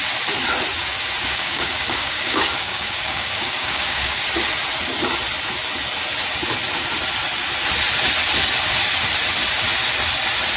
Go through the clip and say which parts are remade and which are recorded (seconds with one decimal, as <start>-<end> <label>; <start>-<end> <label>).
0.0-1.2 recorded; 1.2-4.2 remade; 4.2-10.6 recorded